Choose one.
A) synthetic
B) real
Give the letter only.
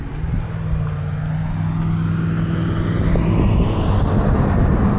B